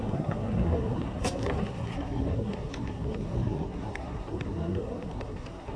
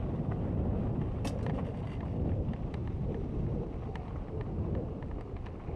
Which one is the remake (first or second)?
first